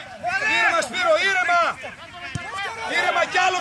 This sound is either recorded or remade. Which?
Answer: recorded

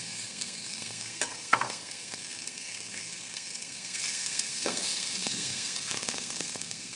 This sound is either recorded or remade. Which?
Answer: remade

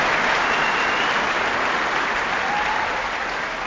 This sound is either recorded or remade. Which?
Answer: recorded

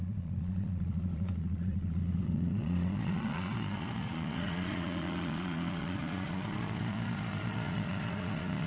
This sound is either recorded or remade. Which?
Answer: remade